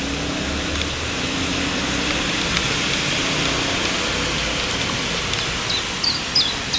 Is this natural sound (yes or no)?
yes